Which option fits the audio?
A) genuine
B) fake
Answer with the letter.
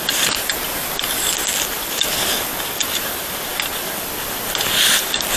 A